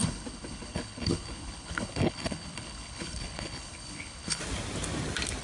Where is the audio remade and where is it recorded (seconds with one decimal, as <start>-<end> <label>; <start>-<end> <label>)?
0.0-4.4 remade; 4.4-5.4 recorded